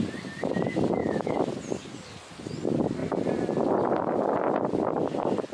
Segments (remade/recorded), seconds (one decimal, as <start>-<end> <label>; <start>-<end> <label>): 0.0-1.0 recorded; 1.0-1.5 remade; 1.5-5.5 recorded